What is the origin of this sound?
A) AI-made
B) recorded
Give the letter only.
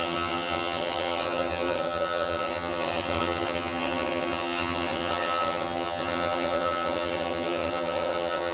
A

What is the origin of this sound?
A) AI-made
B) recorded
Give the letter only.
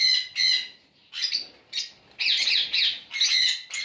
B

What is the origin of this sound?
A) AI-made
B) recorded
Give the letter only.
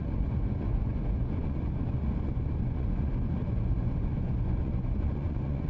A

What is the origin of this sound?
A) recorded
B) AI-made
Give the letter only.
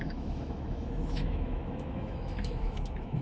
B